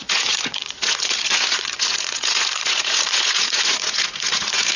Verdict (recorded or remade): remade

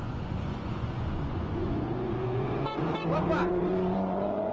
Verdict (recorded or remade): remade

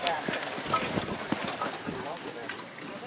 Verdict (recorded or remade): recorded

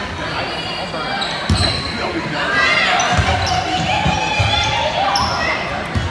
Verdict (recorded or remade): recorded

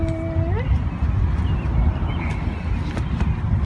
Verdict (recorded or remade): recorded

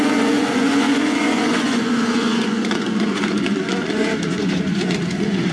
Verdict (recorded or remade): remade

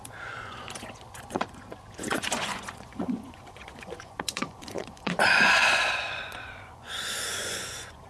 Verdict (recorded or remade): remade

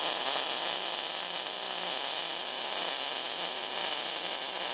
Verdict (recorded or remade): recorded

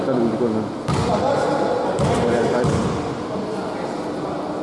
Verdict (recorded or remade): recorded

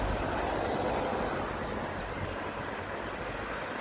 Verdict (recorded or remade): recorded